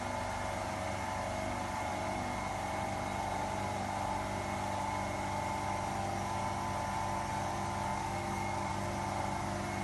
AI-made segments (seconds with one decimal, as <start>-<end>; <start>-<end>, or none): 7.9-8.7